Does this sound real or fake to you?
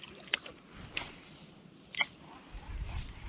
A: real